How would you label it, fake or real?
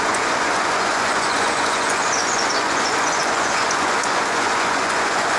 fake